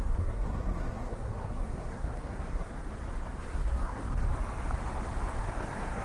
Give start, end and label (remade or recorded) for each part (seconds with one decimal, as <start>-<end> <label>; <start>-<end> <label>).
0.0-2.7 remade; 2.7-3.4 recorded; 3.4-4.0 remade; 4.0-5.4 recorded; 5.4-6.0 remade